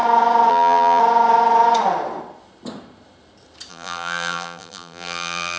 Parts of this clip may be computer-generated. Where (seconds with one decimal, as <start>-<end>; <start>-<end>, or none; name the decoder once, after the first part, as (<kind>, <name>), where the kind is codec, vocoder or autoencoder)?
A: 0.5-1.0 (vocoder, BigVGAN v2); 3.7-5.6